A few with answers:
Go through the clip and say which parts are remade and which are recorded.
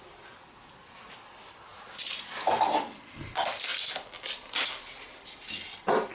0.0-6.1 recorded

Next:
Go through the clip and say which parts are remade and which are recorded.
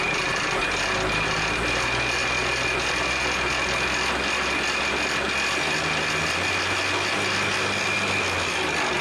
0.0-9.0 recorded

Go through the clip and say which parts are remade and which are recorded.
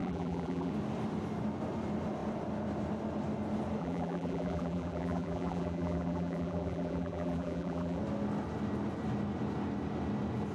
0.0-0.7 remade; 0.7-3.8 recorded; 3.8-8.0 remade; 8.0-10.5 recorded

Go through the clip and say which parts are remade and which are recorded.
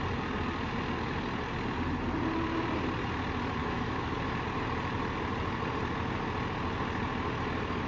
0.0-3.6 recorded; 3.6-4.1 remade; 4.1-7.9 recorded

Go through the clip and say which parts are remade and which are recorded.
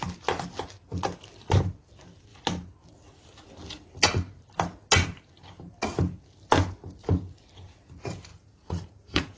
0.0-8.3 recorded; 8.3-9.4 remade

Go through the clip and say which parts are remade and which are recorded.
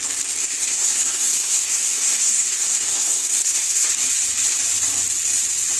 0.0-0.4 recorded; 0.4-3.9 remade; 3.9-5.8 recorded